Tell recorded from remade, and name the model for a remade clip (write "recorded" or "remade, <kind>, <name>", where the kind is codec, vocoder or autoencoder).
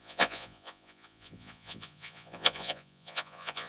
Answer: remade, vocoder, Vocos